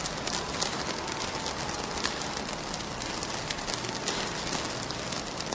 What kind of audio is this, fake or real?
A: real